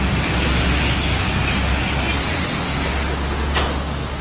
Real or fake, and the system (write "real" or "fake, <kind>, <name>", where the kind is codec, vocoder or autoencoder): real